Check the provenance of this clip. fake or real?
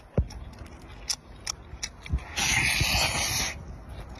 real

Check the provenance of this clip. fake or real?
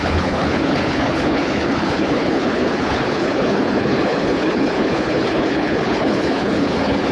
fake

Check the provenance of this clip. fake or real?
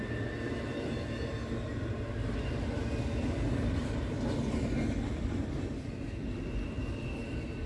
real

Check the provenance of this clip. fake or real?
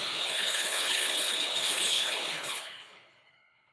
fake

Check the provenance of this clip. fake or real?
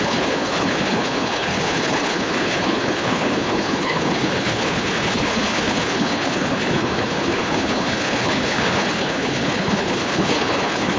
fake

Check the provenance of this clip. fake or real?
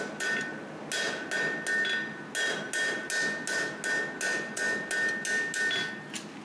real